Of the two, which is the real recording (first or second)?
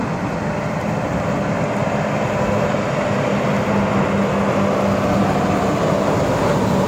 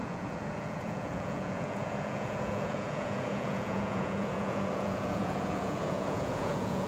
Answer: first